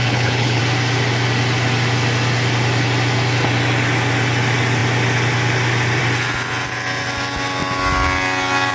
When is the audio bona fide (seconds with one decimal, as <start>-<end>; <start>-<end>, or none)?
0.6-8.7